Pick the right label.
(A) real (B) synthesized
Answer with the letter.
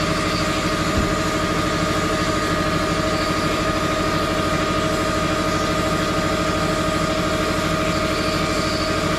A